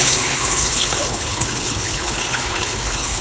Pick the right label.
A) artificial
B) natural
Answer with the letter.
A